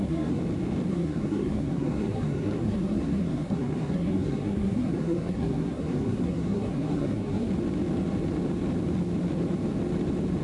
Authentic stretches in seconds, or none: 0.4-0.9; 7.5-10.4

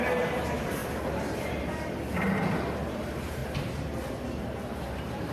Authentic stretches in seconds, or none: 0.8-2.9; 3.4-4.4

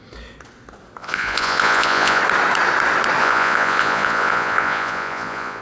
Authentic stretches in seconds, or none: 0.0-1.0; 2.2-3.2

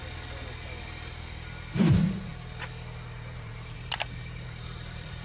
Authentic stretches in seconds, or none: 0.0-1.7